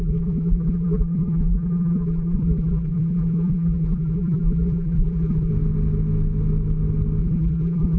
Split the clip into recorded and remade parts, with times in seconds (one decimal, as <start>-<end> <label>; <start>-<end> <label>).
0.0-5.5 remade; 5.5-7.2 recorded; 7.2-8.0 remade